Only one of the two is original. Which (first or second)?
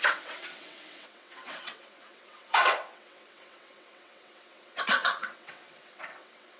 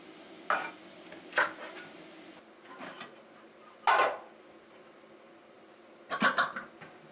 second